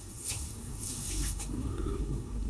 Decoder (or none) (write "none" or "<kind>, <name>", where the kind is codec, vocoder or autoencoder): codec, SNAC